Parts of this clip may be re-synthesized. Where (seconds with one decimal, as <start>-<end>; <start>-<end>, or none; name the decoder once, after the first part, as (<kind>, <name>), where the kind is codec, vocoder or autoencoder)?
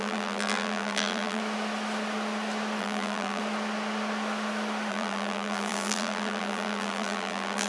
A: 0.0-1.4 (vocoder, BigVGAN v2); 2.8-3.4; 4.9-7.7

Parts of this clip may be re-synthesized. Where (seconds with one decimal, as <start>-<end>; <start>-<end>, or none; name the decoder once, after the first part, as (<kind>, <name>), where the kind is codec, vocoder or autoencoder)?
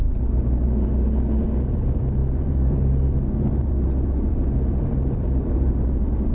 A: 1.7-6.3 (vocoder, BigVGAN v2)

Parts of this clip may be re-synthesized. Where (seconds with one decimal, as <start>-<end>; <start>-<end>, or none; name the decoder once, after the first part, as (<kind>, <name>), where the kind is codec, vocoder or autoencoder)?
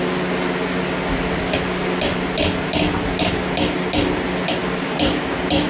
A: 4.6-5.2 (vocoder, BigVGAN v2)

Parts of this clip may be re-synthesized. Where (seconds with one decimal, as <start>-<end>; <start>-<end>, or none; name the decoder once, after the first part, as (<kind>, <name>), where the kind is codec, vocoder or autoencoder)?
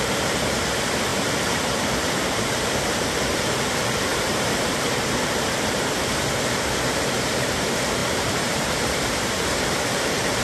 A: 0.0-10.4 (vocoder, BigVGAN v2)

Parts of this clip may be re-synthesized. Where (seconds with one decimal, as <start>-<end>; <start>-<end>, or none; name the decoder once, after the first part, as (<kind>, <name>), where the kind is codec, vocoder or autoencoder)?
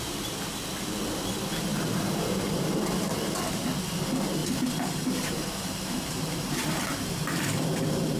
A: 1.7-3.7 (vocoder, BigVGAN v2); 4.4-8.2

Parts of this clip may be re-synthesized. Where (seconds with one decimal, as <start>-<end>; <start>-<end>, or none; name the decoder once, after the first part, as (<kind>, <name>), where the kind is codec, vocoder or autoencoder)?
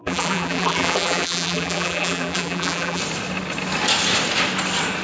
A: 0.0-3.0 (vocoder, BigVGAN v2)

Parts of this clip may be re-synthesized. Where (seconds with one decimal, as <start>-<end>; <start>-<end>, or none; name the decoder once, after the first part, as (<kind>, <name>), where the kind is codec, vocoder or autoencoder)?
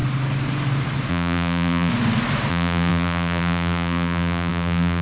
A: 1.1-1.9 (vocoder, BigVGAN v2); 2.5-5.0